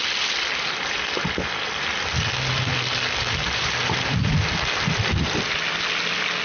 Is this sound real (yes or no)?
yes